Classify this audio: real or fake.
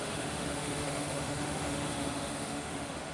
fake